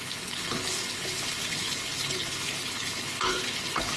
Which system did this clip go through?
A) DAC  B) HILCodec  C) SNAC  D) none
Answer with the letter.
B